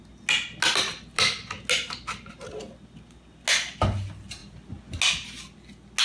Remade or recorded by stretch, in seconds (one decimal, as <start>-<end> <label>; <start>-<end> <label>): 0.0-6.0 recorded